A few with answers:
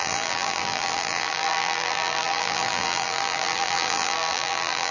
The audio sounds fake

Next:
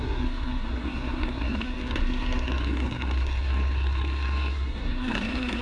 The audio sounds fake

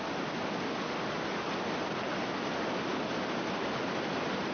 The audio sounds real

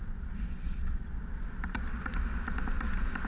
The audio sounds real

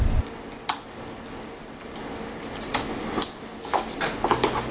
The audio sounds real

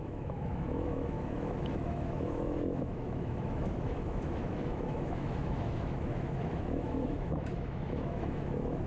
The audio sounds fake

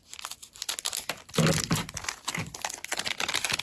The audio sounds real